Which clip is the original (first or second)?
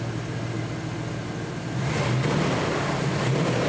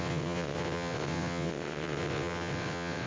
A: first